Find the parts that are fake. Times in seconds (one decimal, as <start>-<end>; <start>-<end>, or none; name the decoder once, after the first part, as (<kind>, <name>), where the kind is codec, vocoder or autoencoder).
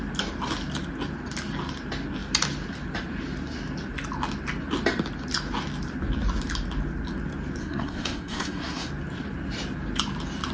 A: 7.6-8.9 (codec, SNAC)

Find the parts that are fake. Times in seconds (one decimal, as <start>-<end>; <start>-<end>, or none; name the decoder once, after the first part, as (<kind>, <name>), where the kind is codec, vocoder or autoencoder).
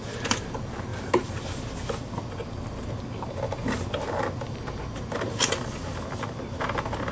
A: none